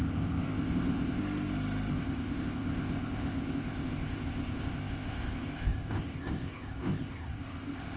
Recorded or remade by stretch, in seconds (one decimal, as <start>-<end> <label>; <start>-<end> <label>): 0.0-1.2 remade; 1.2-1.9 recorded; 1.9-8.0 remade